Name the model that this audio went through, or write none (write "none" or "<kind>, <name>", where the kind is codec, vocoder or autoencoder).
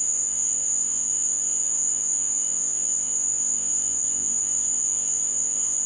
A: vocoder, Vocos